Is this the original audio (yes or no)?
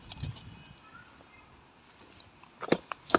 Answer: yes